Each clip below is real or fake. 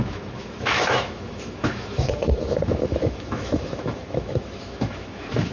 fake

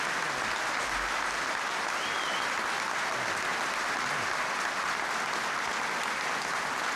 real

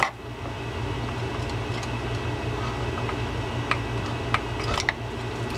real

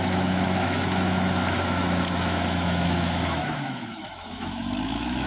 fake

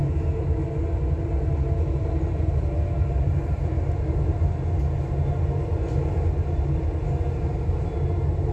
real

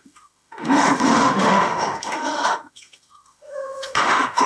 fake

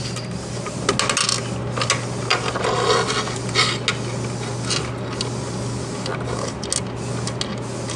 real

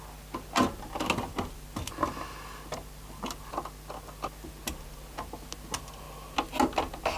real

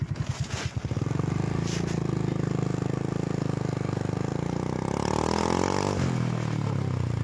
real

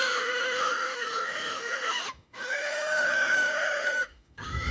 fake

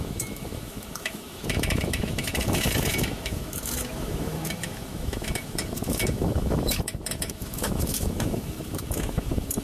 fake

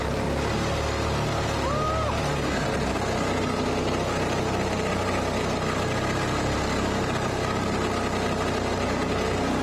real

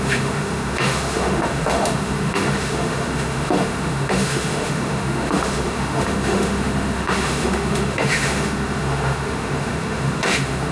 fake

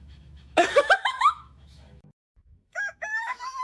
fake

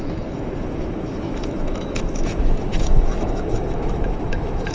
fake